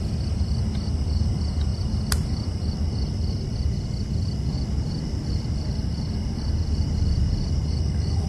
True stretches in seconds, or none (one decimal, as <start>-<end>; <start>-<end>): 0.0-8.3